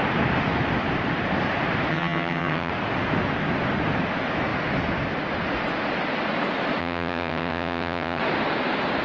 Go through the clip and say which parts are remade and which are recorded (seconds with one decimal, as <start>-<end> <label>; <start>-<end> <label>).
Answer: 0.0-1.9 recorded; 1.9-2.7 remade; 2.7-6.8 recorded; 6.8-8.2 remade; 8.2-9.0 recorded